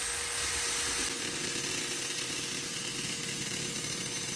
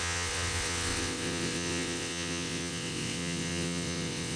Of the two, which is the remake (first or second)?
second